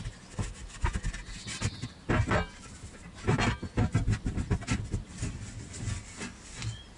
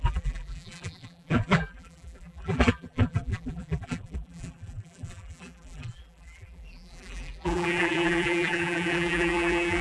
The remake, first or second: second